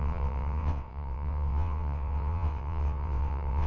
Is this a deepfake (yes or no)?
yes